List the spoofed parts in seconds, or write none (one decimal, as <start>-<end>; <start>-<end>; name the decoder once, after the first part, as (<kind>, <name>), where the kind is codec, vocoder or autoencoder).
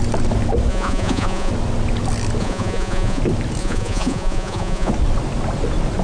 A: 0.7-1.5 (vocoder, Vocos); 2.4-3.2; 3.6-4.9